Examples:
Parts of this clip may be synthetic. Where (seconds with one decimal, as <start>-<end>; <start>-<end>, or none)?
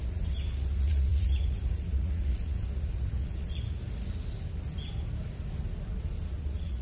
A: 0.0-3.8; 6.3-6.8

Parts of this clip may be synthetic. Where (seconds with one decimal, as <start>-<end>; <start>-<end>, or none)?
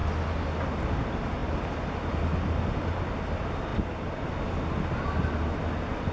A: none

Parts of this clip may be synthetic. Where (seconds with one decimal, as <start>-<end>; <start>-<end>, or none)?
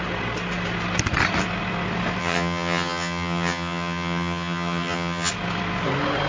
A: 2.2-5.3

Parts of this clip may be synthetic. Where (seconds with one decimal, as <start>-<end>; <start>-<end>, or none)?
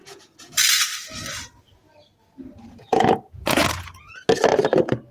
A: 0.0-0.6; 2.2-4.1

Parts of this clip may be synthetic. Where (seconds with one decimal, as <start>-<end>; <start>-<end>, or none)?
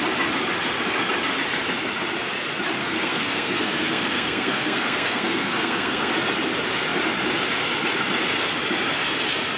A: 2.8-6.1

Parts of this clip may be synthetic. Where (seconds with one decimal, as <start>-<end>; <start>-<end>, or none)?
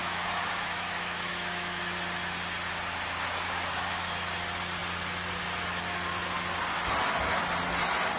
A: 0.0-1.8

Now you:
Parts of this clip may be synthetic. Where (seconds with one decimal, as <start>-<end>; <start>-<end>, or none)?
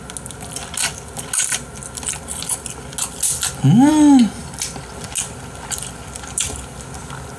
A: none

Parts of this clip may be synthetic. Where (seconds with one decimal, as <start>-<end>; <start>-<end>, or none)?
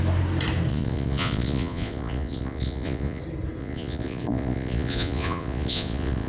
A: 0.7-3.2; 3.6-6.3